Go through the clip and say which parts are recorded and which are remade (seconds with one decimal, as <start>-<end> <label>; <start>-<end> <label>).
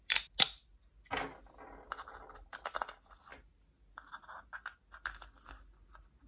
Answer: 0.0-6.3 recorded